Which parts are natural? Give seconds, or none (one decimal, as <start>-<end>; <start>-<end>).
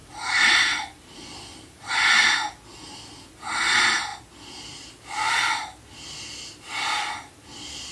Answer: 1.9-7.9